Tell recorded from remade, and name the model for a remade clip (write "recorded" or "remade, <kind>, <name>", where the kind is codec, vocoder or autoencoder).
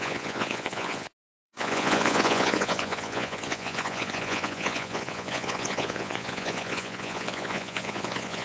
remade, vocoder, Vocos